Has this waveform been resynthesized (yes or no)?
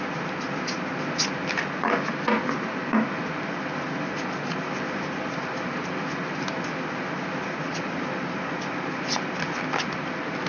no